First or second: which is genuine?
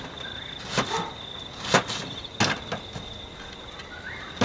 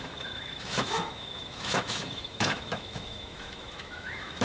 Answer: first